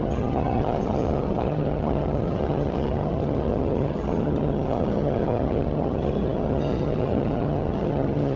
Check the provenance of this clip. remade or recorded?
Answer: remade